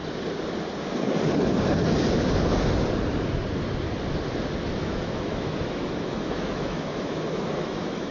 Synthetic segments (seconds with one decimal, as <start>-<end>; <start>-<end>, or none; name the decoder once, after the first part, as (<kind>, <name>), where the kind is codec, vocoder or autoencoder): 4.8-8.1 (autoencoder, DAC-VAE)